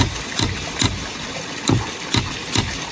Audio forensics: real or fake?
fake